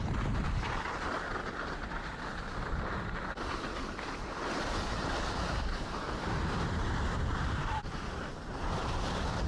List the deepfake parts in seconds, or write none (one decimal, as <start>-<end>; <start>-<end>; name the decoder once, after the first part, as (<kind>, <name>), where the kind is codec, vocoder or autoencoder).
6.8-8.0 (vocoder, BigVGAN v2)

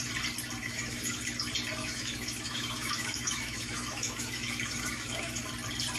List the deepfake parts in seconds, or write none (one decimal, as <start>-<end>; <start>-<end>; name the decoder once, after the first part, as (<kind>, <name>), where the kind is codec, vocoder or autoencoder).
0.6-1.2 (autoencoder, DAC-VAE); 1.8-5.4

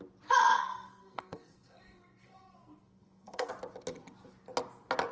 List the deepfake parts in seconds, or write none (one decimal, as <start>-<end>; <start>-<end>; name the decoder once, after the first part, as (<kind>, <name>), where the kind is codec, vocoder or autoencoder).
0.4-3.5 (codec, SNAC)

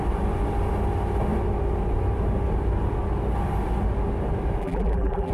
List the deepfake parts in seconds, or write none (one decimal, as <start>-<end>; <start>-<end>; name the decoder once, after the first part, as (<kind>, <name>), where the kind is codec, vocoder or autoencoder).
4.6-5.3 (vocoder, BigVGAN v2)

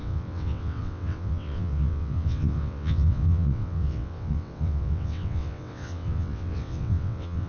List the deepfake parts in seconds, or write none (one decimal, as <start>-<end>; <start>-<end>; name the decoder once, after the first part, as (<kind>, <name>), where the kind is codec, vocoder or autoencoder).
0.0-7.5 (vocoder, WaveNeXt)

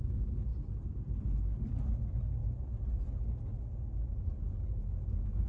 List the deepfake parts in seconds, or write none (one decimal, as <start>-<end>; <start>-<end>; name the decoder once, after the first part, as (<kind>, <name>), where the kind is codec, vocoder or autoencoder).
0.5-1.2 (vocoder, BigVGAN v2)

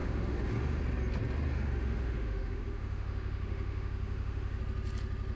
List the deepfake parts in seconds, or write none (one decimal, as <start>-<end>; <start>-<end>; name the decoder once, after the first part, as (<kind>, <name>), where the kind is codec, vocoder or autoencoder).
0.0-0.8 (autoencoder, DAC-VAE); 1.5-4.6

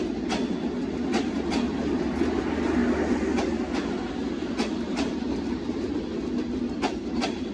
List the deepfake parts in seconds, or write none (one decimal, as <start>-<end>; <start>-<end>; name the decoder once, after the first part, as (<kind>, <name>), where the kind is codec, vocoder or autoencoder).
none